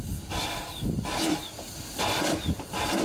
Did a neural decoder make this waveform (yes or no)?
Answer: no